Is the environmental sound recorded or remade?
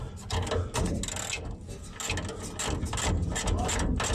recorded